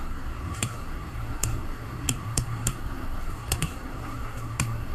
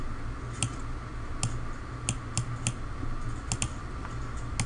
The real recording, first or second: second